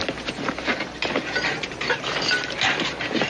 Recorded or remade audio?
remade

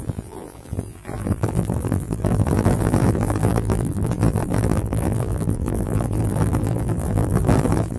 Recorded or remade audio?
remade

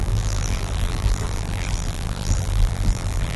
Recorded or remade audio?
remade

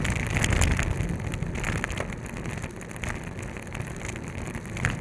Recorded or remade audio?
recorded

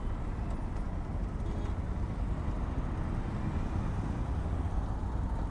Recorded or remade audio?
recorded